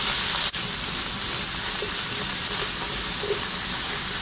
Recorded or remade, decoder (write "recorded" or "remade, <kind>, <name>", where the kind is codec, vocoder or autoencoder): recorded